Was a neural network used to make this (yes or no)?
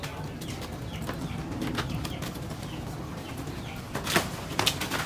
no